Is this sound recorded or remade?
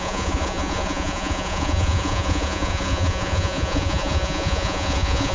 remade